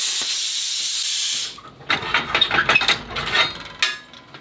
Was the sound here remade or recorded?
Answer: recorded